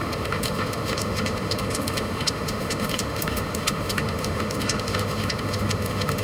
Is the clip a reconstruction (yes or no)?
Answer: yes